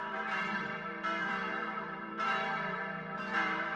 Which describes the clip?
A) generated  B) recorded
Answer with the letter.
A